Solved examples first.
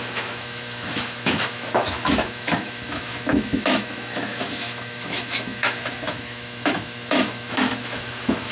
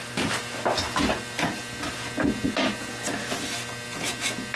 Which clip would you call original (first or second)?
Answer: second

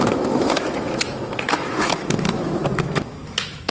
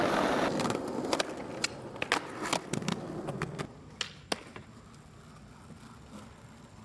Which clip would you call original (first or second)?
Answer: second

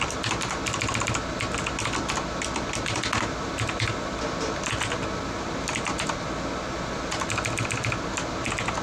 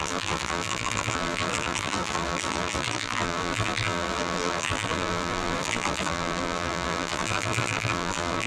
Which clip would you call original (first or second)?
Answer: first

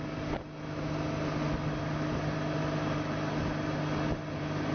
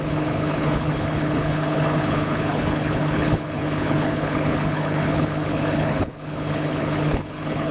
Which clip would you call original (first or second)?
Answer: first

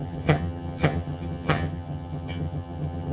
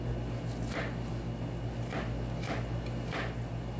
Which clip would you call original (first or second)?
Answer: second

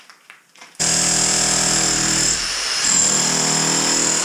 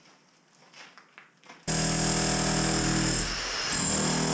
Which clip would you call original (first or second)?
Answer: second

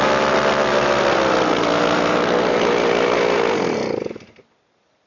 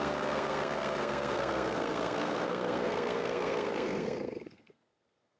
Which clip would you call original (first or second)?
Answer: first